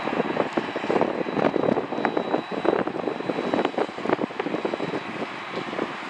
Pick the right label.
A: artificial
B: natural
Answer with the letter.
B